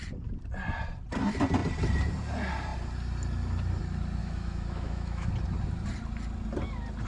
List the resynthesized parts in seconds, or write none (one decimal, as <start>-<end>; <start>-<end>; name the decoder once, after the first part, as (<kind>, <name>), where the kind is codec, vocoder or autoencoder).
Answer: 4.2-5.3 (autoencoder, DAC-VAE)